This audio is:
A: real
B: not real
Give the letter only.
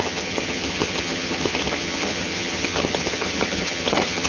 B